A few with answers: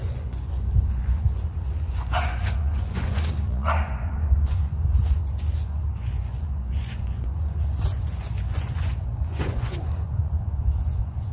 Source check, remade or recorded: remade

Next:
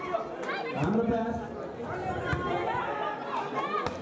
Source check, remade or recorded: recorded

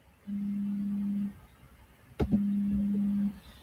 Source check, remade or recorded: recorded